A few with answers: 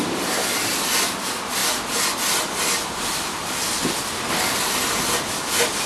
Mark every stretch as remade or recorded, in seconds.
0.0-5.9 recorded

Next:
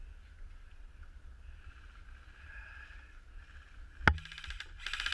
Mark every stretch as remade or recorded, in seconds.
0.0-5.1 recorded

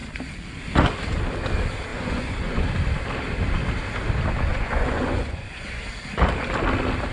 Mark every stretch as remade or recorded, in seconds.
0.0-1.9 recorded; 1.9-2.7 remade; 2.7-4.5 recorded; 4.5-5.8 remade; 5.8-7.1 recorded

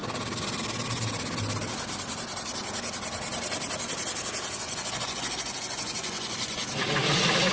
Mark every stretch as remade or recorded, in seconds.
0.0-4.5 recorded; 4.5-6.6 remade; 6.6-7.5 recorded

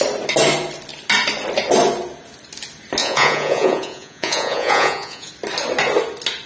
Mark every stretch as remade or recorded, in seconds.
0.0-3.0 recorded; 3.0-5.3 remade; 5.3-6.5 recorded

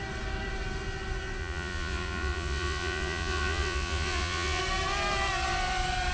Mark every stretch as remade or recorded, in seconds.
0.0-1.4 recorded; 1.4-4.6 remade; 4.6-6.1 recorded

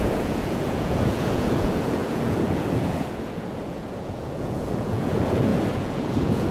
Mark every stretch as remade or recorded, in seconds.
0.0-6.5 remade